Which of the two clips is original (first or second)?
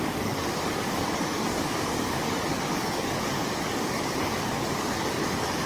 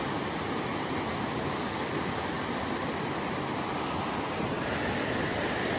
second